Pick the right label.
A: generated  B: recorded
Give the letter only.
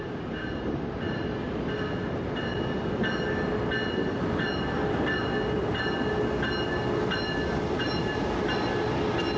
B